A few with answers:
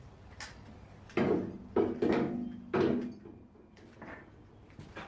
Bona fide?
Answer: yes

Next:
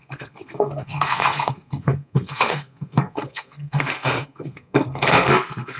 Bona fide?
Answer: no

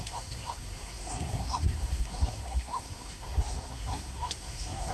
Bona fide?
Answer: no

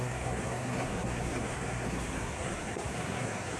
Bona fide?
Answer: no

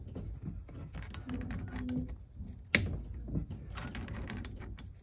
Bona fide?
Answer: yes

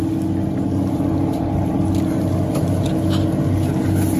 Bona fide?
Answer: yes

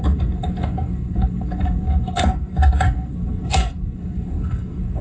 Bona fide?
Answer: no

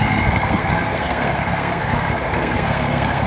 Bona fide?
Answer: no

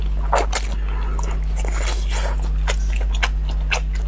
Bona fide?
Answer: yes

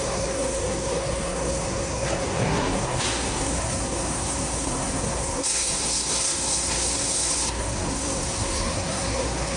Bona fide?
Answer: no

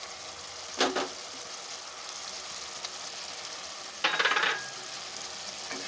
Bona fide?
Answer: yes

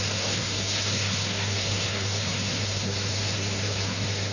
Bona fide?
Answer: no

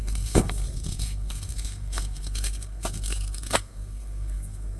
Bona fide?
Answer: no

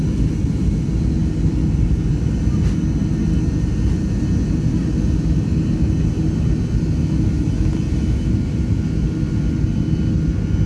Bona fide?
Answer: yes